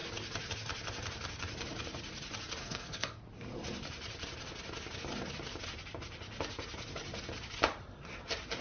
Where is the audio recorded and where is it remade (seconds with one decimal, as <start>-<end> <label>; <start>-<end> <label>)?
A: 0.0-2.6 recorded; 2.6-3.2 remade; 3.2-8.6 recorded